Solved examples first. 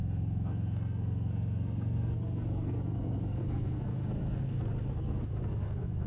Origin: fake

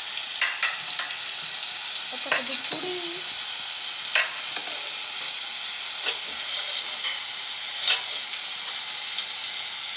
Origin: real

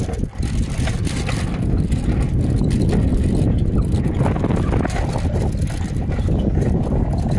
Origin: real